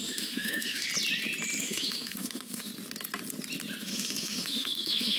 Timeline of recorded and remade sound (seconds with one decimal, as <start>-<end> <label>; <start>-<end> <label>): 0.0-0.9 remade; 0.9-1.6 recorded; 1.6-2.7 remade; 2.7-3.8 recorded; 3.8-5.2 remade